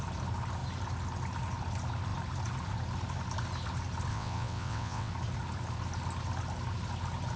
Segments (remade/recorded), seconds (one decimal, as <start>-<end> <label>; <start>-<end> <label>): 0.0-4.1 recorded; 4.1-5.1 remade; 5.1-7.4 recorded